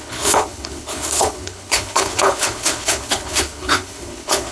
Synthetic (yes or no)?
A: yes